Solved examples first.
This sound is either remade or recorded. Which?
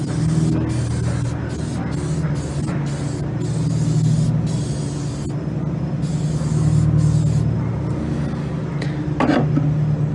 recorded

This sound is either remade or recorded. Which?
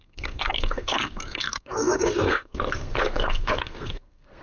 remade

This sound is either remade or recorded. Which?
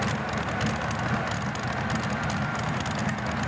recorded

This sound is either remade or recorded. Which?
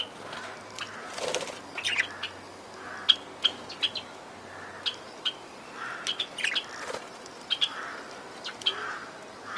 recorded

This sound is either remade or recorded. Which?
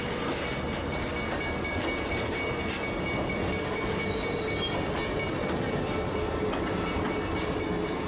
recorded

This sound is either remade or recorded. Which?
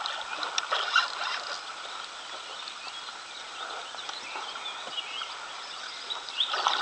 recorded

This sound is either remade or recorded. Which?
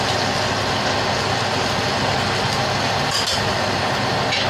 recorded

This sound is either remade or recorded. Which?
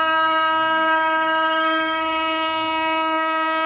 remade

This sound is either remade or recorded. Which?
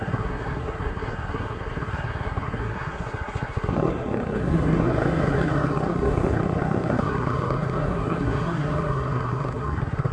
remade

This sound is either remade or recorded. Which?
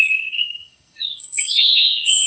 remade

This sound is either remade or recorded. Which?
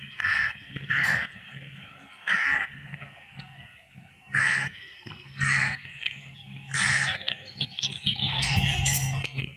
remade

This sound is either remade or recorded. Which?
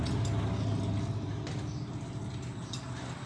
recorded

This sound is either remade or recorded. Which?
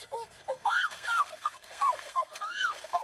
remade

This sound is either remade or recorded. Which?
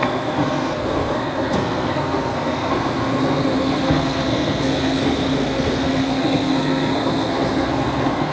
remade